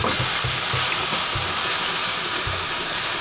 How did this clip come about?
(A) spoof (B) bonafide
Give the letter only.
B